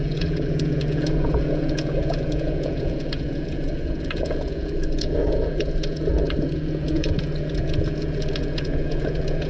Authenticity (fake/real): fake